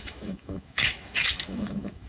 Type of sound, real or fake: fake